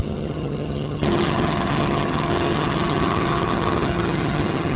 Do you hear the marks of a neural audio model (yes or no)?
yes